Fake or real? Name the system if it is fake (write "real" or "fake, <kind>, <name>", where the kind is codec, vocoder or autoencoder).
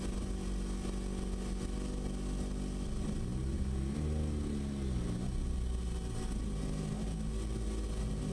real